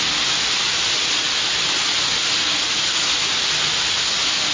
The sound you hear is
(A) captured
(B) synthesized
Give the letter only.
A